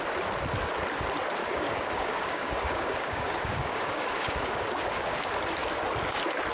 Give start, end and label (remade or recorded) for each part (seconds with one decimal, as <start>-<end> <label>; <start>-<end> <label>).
0.0-1.4 recorded; 1.4-5.3 remade; 5.3-6.5 recorded